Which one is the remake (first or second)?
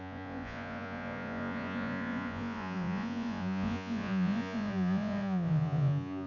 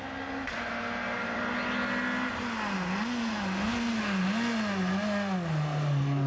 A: first